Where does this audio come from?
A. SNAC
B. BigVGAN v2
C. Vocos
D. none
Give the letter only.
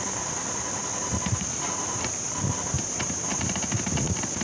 B